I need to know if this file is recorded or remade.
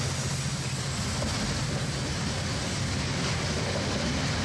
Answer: recorded